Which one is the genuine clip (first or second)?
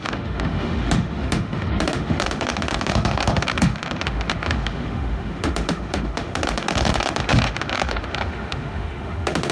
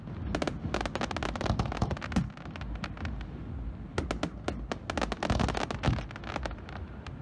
second